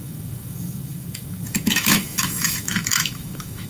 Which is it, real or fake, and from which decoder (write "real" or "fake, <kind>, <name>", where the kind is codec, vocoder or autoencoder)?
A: fake, autoencoder, DAC-VAE